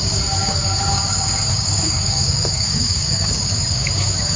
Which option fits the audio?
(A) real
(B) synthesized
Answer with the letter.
B